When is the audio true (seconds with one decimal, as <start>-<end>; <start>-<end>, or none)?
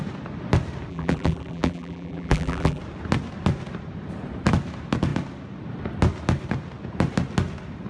0.0-0.9; 2.8-7.9